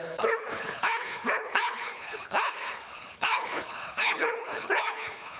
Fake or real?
fake